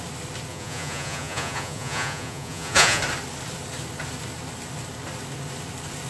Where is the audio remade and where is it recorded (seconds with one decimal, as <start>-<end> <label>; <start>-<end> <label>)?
0.0-0.5 recorded; 0.5-3.0 remade; 3.0-6.1 recorded